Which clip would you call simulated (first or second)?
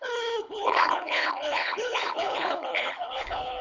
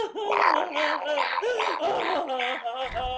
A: first